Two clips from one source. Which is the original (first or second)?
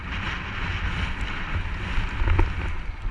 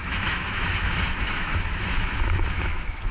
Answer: first